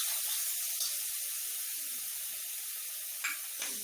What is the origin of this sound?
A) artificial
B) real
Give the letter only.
B